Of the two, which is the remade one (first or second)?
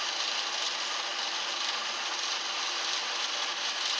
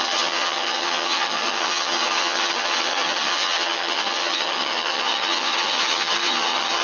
second